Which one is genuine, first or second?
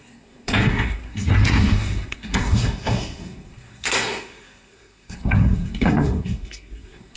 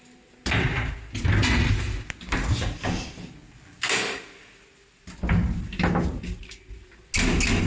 second